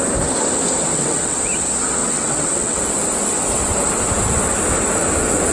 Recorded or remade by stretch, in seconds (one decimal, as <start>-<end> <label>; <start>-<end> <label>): 0.0-0.9 recorded; 0.9-1.4 remade; 1.4-2.0 recorded; 2.0-2.8 remade; 2.8-5.5 recorded